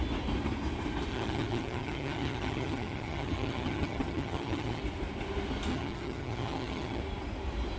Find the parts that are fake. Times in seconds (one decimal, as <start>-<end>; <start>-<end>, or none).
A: 1.1-4.8; 5.7-7.0